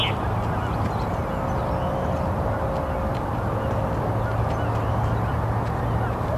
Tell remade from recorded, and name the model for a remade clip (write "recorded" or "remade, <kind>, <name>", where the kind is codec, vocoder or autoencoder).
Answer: recorded